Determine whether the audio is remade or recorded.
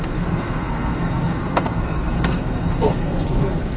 remade